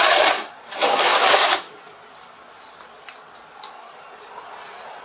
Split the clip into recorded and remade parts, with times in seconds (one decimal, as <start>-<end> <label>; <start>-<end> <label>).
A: 0.0-0.9 recorded; 0.9-1.8 remade; 1.8-5.0 recorded